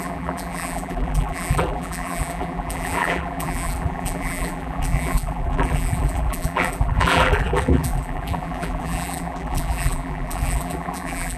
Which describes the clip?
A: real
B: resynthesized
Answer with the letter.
B